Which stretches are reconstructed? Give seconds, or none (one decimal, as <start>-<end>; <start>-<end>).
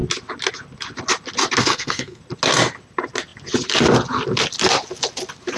1.6-2.2